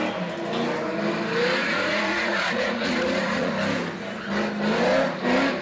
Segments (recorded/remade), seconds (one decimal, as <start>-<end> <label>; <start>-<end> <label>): 0.0-1.6 recorded; 1.6-3.5 remade; 3.5-5.6 recorded